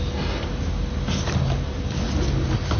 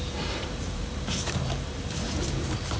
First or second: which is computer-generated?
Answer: second